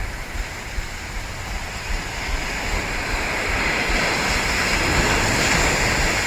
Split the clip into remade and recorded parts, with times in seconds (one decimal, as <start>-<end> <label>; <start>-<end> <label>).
0.0-6.3 recorded